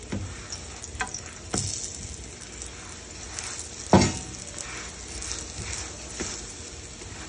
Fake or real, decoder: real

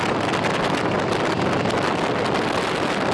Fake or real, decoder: real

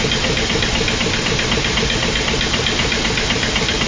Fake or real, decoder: real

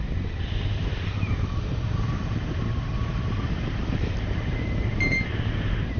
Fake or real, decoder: fake, vocoder, BigVGAN v2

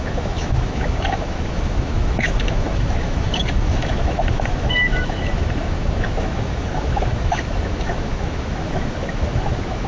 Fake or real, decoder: fake, autoencoder, DAC-VAE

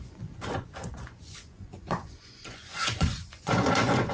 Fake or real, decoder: fake, vocoder, Vocos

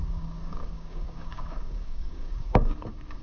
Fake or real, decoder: fake, codec, DAC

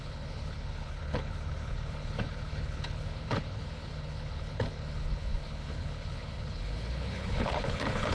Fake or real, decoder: fake, codec, HILCodec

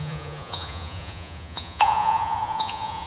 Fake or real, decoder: fake, vocoder, Vocos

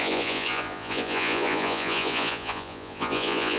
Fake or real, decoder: fake, vocoder, Vocos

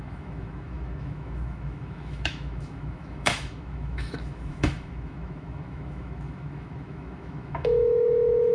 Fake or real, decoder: fake, autoencoder, DAC-VAE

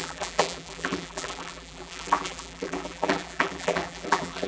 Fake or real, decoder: fake, vocoder, BigVGAN v2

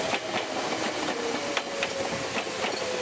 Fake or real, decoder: real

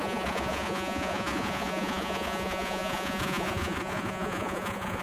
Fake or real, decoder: fake, vocoder, Vocos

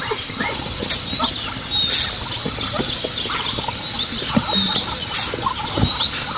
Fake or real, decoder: real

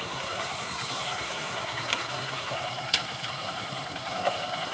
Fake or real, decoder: fake, codec, SNAC